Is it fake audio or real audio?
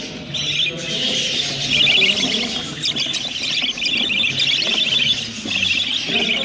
real